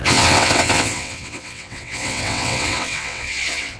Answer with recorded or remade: remade